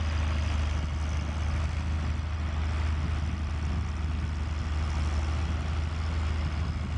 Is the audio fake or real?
real